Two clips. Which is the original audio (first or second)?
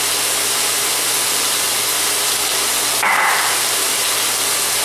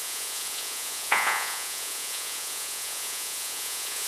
first